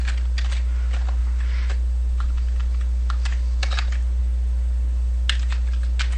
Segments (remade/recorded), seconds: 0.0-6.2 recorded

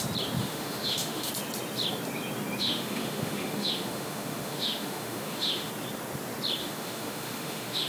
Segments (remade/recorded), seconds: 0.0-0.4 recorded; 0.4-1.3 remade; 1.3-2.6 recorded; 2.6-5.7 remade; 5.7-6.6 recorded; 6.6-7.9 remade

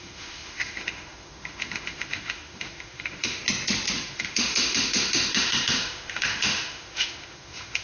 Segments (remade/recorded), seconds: 0.0-3.4 remade; 3.4-4.1 recorded; 4.1-7.8 remade

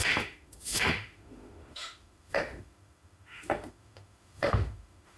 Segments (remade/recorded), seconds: 0.0-5.2 remade

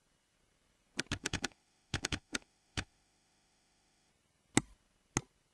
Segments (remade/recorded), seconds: 0.0-1.2 recorded; 1.2-4.1 remade; 4.1-5.5 recorded

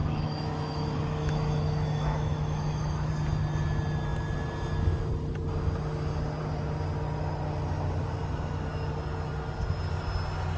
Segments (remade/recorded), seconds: 0.0-3.1 remade; 3.1-10.6 recorded

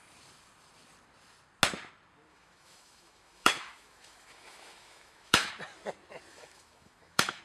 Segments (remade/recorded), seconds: 0.0-2.3 recorded; 2.3-5.5 remade; 5.5-6.3 recorded; 6.3-7.4 remade

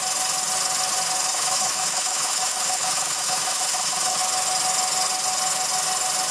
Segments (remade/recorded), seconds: 0.0-1.3 recorded; 1.3-4.2 remade; 4.2-6.3 recorded